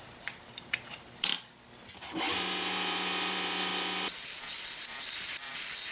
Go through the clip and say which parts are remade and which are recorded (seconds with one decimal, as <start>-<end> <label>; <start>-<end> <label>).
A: 0.0-1.3 remade; 1.3-2.2 recorded; 2.2-5.9 remade